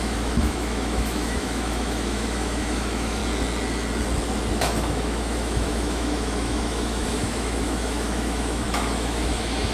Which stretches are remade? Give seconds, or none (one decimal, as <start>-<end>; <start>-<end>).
0.0-3.2; 4.5-9.7